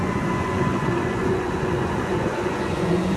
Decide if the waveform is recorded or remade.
remade